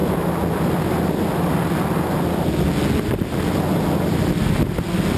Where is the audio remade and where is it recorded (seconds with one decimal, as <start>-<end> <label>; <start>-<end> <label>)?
0.0-5.2 recorded